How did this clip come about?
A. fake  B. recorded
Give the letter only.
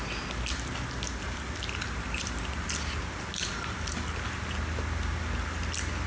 B